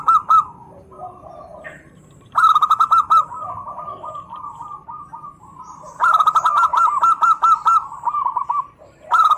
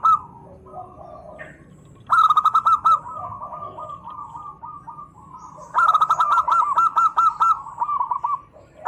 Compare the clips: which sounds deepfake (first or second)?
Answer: first